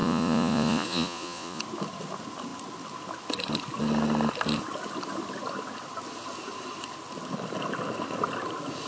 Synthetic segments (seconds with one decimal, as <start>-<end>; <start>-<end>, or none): 0.0-1.6